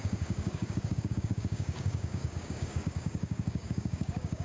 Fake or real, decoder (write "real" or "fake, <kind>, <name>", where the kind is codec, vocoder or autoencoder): fake, codec, DAC